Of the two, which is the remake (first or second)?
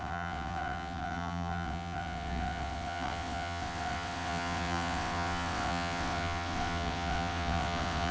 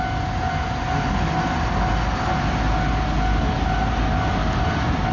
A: first